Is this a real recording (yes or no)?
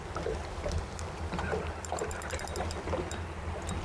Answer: yes